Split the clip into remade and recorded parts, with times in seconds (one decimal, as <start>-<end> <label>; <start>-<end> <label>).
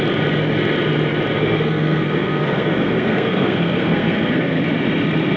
0.0-1.4 recorded; 1.4-4.6 remade; 4.6-5.4 recorded